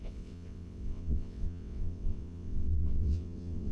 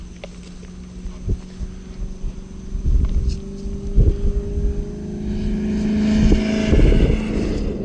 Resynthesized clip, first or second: first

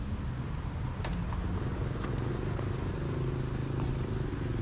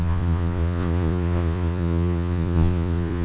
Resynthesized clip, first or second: second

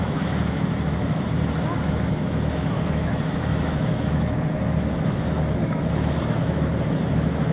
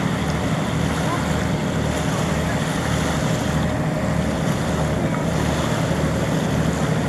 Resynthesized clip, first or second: first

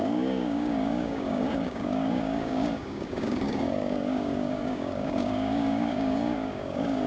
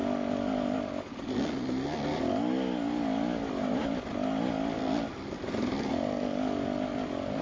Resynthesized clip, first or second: first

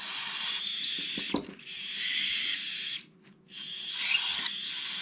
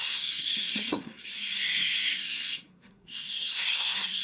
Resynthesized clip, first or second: second